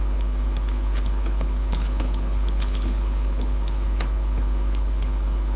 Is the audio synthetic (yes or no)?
yes